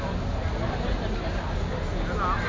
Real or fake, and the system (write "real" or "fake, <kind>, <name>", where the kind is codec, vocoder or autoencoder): real